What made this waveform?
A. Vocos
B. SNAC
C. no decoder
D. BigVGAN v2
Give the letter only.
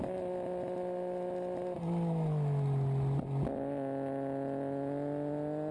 C